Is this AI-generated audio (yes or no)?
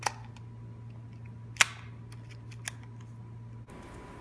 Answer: no